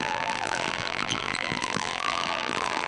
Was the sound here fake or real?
fake